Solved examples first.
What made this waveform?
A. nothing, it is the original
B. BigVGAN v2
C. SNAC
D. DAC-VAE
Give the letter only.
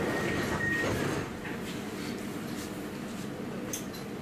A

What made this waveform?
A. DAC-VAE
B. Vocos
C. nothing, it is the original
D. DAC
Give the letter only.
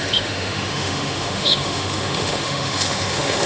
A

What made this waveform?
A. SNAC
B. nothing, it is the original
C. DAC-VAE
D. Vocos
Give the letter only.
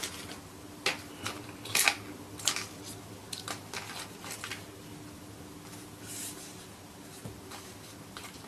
B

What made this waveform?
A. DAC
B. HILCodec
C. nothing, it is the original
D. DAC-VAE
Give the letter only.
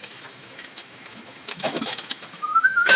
D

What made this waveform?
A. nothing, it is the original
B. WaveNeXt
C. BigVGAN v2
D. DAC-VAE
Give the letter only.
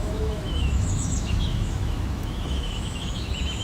D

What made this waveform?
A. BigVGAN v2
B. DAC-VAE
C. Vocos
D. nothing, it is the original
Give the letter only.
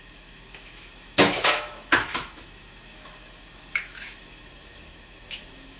B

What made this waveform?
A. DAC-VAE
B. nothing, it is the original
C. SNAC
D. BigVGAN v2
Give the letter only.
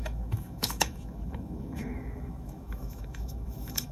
A